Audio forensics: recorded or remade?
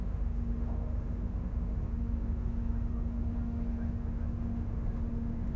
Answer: remade